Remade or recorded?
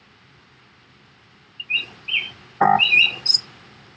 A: recorded